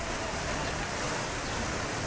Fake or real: real